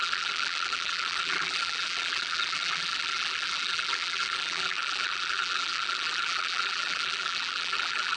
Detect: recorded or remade remade